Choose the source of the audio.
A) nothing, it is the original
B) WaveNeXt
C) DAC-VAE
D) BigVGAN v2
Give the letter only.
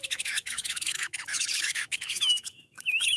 C